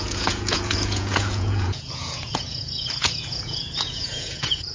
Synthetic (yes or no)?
yes